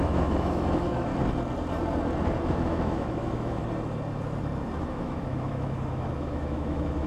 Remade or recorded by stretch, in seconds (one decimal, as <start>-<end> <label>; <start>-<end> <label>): 0.0-1.1 remade; 1.1-2.5 recorded; 2.5-3.6 remade; 3.6-4.8 recorded; 4.8-7.1 remade